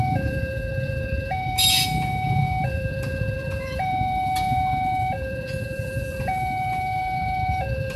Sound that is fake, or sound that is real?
fake